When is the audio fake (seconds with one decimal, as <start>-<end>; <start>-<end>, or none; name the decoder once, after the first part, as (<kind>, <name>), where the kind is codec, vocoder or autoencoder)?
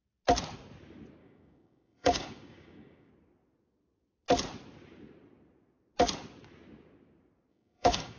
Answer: 1.2-3.1 (codec, DAC); 7.5-8.2